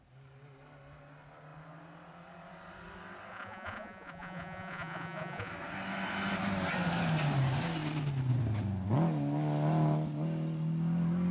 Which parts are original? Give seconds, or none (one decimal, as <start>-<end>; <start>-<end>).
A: 0.0-3.3; 5.5-11.3